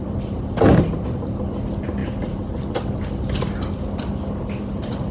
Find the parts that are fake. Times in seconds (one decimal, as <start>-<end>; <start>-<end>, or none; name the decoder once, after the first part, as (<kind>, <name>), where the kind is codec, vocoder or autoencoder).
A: none